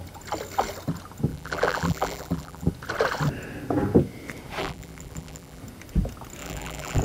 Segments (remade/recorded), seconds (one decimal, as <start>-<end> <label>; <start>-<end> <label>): 0.0-1.3 recorded; 1.3-2.7 remade; 2.7-4.6 recorded; 4.6-5.6 remade; 5.6-6.4 recorded; 6.4-7.0 remade